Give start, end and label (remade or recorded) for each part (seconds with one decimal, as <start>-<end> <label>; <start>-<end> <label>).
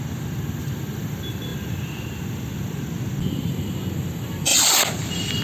0.0-4.5 recorded; 4.5-5.4 remade